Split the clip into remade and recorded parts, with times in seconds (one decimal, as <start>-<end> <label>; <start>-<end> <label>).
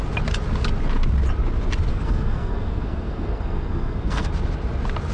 0.0-1.9 recorded; 1.9-4.3 remade; 4.3-5.1 recorded